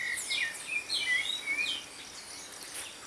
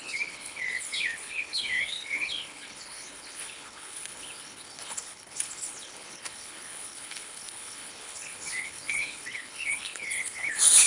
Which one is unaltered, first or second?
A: first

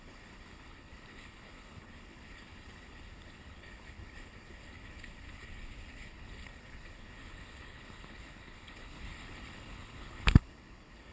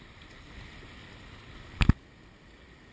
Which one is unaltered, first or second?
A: second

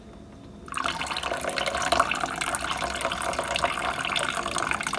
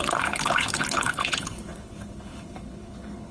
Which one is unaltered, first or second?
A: first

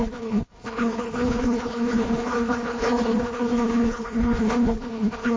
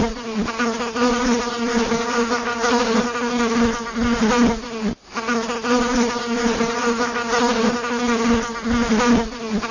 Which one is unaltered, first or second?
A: second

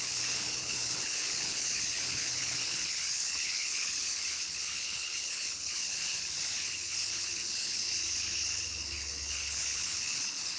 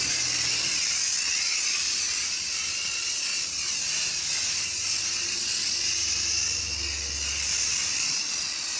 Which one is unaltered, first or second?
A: second